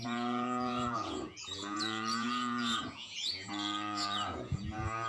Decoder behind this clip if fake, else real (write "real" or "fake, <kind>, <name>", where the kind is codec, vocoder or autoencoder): fake, vocoder, Vocos